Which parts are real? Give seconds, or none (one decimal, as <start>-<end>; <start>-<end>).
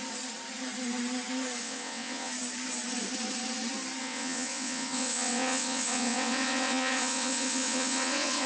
0.0-1.6; 2.3-4.0